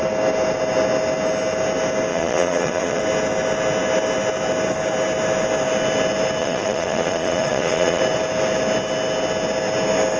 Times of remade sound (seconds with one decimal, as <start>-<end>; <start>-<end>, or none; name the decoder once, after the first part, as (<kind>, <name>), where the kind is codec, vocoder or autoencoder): 2.1-3.0 (vocoder, Vocos); 6.4-8.0